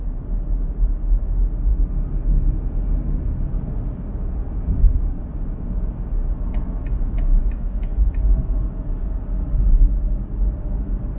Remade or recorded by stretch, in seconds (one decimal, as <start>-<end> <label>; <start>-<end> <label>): 0.0-7.4 recorded; 7.4-8.1 remade; 8.1-11.2 recorded